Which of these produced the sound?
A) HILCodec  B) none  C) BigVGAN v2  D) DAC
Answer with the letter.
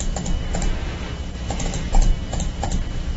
B